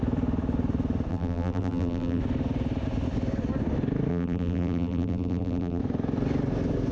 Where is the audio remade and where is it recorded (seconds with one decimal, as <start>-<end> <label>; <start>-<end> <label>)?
0.0-1.1 recorded; 1.1-2.2 remade; 2.2-4.1 recorded; 4.1-5.8 remade; 5.8-6.9 recorded